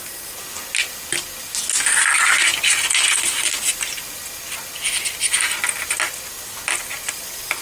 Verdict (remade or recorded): recorded